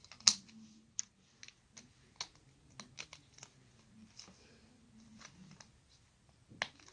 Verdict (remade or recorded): recorded